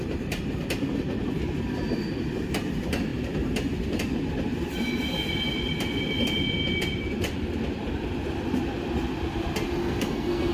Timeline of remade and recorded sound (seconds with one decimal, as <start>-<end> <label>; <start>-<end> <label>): 0.0-9.8 recorded; 9.8-10.5 remade